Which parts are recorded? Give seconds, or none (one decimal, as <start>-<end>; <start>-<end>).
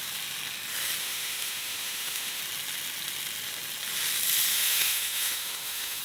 0.0-1.0; 2.4-4.5